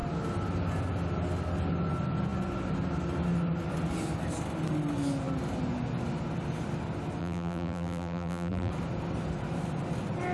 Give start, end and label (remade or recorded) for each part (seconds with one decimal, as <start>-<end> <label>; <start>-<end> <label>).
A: 0.0-7.2 recorded; 7.2-8.7 remade; 8.7-10.3 recorded